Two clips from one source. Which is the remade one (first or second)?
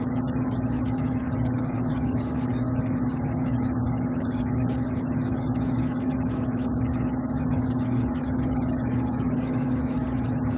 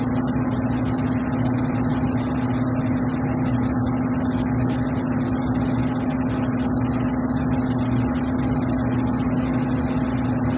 first